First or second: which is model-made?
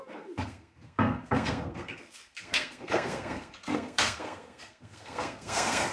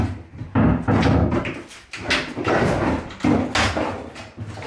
first